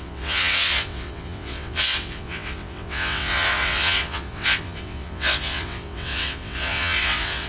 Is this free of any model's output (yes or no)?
no